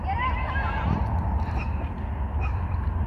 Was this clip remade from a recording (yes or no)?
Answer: no